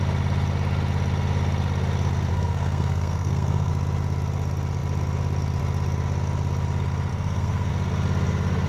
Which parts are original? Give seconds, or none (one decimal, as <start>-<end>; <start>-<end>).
0.0-2.3; 3.7-7.1; 7.7-8.7